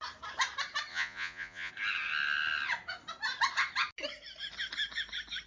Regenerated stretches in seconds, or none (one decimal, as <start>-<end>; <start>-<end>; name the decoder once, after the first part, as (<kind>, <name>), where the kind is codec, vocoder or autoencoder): 0.9-1.7 (vocoder, Vocos)